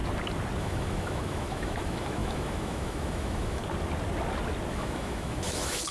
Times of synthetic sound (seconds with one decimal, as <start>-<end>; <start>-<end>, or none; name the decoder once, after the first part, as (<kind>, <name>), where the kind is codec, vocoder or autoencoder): 0.6-3.6 (autoencoder, DAC-VAE); 4.7-5.9